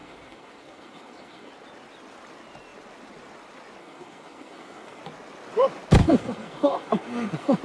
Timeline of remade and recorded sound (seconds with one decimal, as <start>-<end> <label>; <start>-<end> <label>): 0.0-1.5 remade; 1.5-3.8 recorded; 3.8-5.0 remade; 5.0-6.0 recorded; 6.0-7.6 remade